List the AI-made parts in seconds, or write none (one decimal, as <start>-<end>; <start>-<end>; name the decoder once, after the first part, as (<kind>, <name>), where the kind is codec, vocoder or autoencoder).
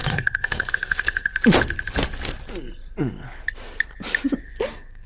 0.0-1.3 (codec, SNAC); 4.4-5.1